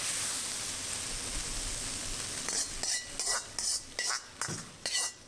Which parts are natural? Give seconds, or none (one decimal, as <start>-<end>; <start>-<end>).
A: 0.0-5.3